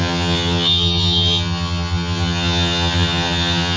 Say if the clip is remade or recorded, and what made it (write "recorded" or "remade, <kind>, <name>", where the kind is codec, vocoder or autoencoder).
remade, vocoder, HiFi-GAN